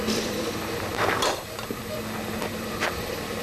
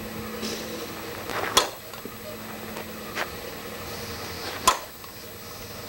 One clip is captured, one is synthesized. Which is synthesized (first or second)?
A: first